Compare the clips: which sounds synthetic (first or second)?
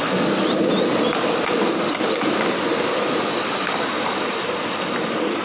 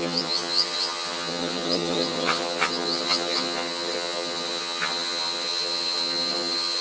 second